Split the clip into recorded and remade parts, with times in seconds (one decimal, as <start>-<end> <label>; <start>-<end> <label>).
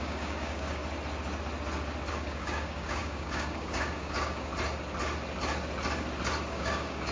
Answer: 0.0-0.8 remade; 0.8-2.1 recorded; 2.1-4.5 remade; 4.5-6.5 recorded; 6.5-7.1 remade